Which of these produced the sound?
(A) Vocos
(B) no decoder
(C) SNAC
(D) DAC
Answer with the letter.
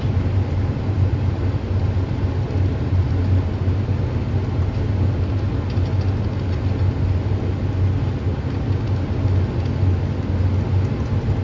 B